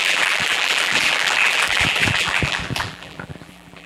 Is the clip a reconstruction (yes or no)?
yes